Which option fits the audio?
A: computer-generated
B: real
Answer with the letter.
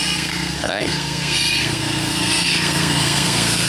A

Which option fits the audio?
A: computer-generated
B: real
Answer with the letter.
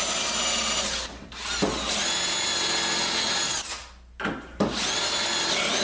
B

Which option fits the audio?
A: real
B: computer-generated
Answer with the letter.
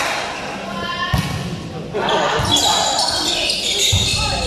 A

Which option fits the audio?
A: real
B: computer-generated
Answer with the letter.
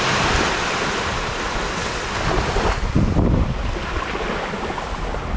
A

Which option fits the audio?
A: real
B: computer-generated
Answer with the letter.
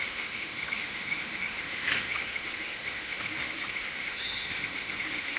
B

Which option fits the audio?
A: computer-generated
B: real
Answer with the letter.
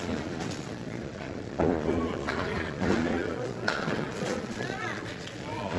A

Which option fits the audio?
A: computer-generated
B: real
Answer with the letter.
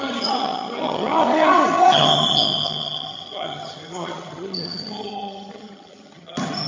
A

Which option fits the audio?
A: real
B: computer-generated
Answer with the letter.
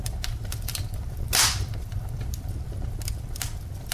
A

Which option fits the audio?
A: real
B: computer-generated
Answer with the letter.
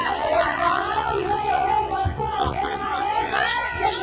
B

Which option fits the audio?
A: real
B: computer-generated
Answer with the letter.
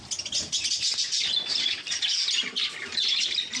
A